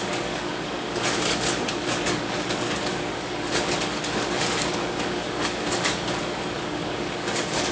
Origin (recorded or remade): remade